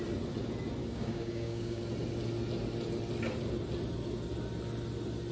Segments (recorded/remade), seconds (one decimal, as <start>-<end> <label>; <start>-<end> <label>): 0.0-0.8 recorded; 0.8-1.8 remade; 1.8-5.3 recorded